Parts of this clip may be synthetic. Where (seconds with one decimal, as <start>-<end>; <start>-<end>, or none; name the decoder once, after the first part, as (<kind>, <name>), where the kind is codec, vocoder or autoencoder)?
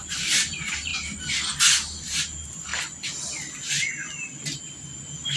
0.0-0.9 (vocoder, BigVGAN v2); 2.0-2.7; 4.3-5.4